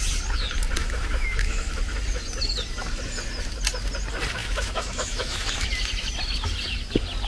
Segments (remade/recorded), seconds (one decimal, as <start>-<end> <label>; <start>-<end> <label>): 0.0-0.8 recorded; 0.8-1.7 remade; 1.7-4.4 recorded; 4.4-5.7 remade; 5.7-7.3 recorded